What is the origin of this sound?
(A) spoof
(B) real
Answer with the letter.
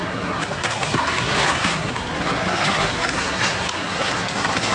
A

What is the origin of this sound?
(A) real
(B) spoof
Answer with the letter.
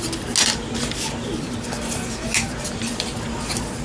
A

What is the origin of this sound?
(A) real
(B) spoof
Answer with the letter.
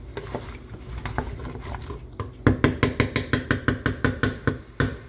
A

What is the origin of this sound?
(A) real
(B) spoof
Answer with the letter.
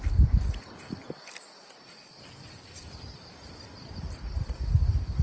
B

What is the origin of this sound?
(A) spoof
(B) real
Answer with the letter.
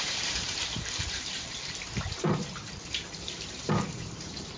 A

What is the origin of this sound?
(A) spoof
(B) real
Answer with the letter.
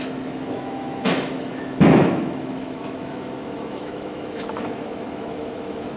A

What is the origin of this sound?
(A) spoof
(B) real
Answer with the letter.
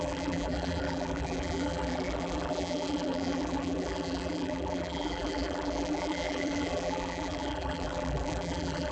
A